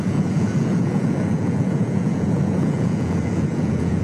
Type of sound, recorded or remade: remade